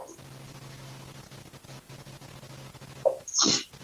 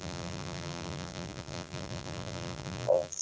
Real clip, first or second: first